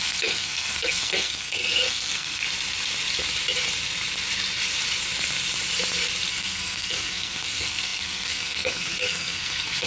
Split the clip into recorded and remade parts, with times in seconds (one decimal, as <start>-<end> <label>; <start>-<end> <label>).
0.0-2.4 remade; 2.4-6.3 recorded; 6.3-9.9 remade